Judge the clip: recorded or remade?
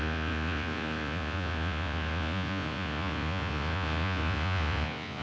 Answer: remade